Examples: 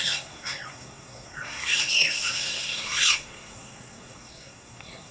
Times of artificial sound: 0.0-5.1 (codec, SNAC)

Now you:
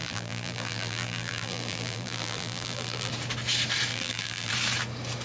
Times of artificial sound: 0.0-3.1 (vocoder, BigVGAN v2); 3.9-4.5